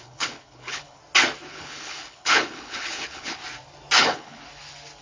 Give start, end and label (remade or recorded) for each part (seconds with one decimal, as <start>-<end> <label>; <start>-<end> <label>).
0.0-1.0 remade; 1.0-1.5 recorded; 1.5-3.4 remade; 3.4-4.0 recorded; 4.0-4.4 remade; 4.4-5.0 recorded